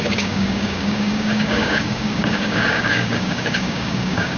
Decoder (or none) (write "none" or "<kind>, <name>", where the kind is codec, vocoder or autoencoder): codec, DAC